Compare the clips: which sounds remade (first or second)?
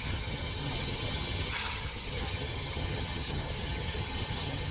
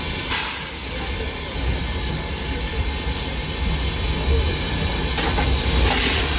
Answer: first